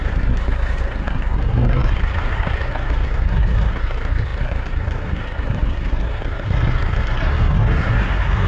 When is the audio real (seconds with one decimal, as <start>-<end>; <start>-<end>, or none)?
none